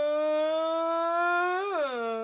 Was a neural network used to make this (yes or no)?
no